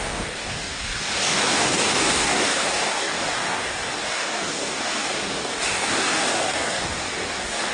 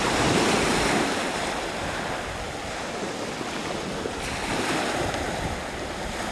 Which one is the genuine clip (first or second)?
second